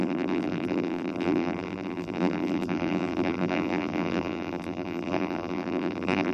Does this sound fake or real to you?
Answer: fake